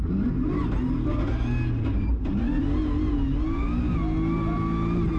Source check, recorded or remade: recorded